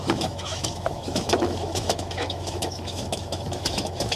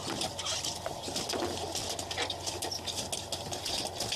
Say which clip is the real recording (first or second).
second